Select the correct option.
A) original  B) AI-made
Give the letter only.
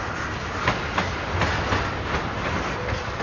A